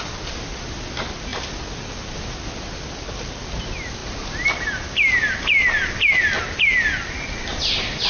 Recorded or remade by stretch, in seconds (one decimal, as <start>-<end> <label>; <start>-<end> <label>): 0.0-8.1 recorded